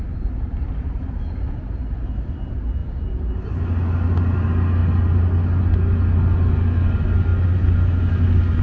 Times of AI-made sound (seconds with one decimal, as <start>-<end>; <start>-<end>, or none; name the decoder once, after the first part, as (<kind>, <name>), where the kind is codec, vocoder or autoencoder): none